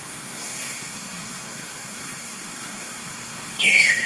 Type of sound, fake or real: fake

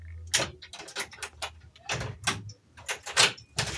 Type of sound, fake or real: real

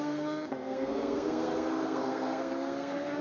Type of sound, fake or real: fake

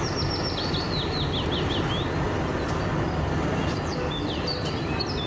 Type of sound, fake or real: real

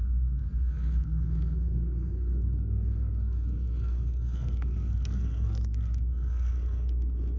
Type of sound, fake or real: fake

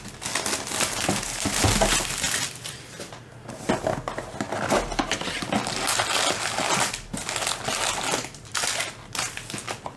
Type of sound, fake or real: real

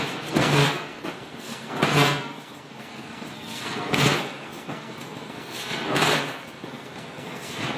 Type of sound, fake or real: fake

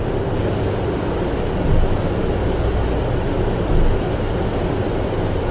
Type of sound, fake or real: real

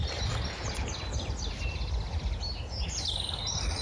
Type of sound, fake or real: real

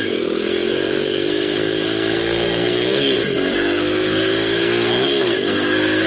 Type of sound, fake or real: fake